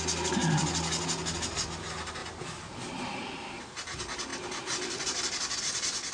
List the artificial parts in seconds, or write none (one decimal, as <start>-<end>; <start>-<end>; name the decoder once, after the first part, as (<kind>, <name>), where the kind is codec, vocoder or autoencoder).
none